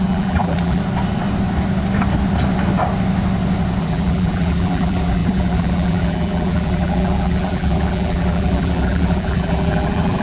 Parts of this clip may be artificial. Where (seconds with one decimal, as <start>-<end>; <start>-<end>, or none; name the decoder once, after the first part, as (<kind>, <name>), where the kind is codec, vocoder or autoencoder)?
0.0-0.8 (vocoder, BigVGAN v2); 3.8-10.2